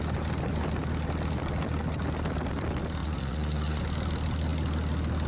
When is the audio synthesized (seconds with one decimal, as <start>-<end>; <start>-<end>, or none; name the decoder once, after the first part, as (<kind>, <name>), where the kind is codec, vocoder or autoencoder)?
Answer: 3.0-3.8 (vocoder, Vocos)